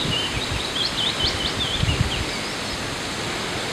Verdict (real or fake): real